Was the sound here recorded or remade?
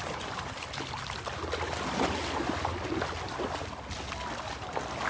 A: recorded